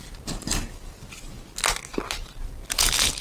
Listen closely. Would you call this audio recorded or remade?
recorded